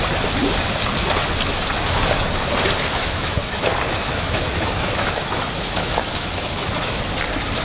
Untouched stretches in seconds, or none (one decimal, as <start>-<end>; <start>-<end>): 0.0-3.0; 7.0-7.6